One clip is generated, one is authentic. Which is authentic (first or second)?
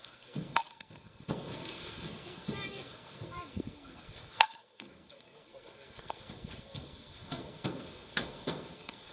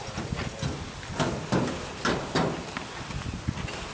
second